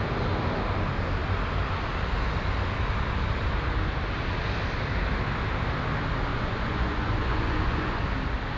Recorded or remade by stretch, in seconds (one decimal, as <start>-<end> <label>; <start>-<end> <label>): 0.0-6.3 recorded; 6.3-8.0 remade; 8.0-8.6 recorded